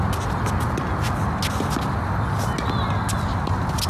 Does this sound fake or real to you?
real